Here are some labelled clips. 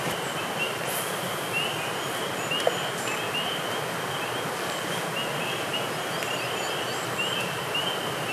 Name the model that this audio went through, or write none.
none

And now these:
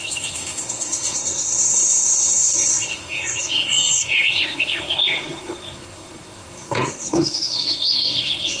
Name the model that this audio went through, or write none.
codec, SNAC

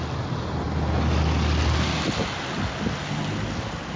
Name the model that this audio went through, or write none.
none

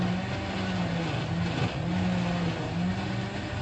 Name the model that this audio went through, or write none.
none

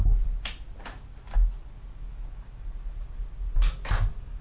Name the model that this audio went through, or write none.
none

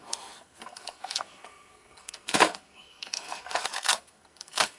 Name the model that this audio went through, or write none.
codec, SNAC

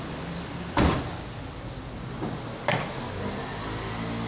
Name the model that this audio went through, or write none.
none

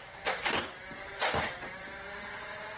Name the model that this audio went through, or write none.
none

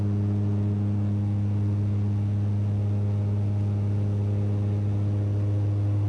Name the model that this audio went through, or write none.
none